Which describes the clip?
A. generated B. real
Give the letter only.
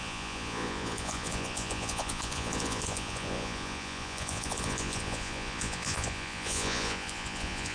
A